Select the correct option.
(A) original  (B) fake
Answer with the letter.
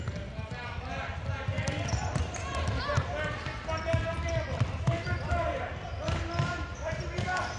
A